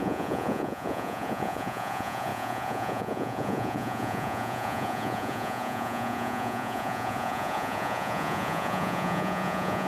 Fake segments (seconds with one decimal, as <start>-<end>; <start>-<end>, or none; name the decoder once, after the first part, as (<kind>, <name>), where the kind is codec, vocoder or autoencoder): 0.0-9.9 (vocoder, Vocos)